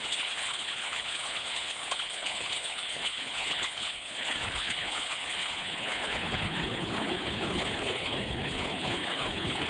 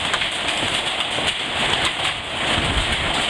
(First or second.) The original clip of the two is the second